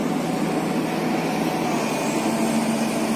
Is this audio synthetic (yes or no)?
no